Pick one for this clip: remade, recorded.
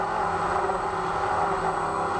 recorded